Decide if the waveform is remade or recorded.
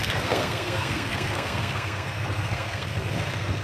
remade